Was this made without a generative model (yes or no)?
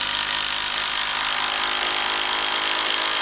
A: yes